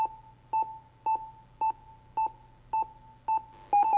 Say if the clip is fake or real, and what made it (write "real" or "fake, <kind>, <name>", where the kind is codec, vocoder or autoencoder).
real